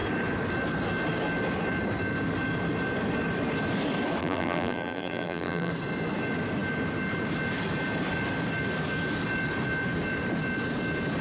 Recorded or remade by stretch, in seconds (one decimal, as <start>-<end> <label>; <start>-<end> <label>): 0.0-4.2 recorded; 4.2-5.7 remade; 5.7-11.2 recorded